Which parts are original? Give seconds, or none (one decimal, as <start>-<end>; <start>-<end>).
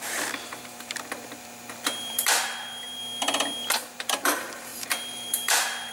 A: 3.0-3.7